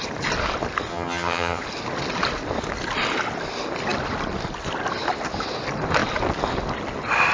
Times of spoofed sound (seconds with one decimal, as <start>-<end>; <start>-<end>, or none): 0.9-1.6